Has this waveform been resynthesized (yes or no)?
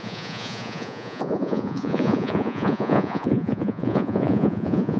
yes